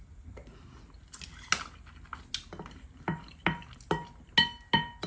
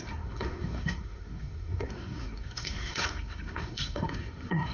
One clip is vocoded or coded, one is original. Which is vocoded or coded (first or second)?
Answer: second